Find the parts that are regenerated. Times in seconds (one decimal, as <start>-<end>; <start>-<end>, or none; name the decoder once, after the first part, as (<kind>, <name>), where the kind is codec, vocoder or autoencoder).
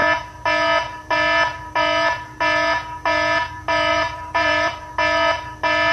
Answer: 3.9-4.7 (vocoder, BigVGAN v2)